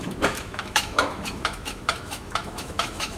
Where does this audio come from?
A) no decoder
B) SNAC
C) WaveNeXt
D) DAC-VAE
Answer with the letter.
D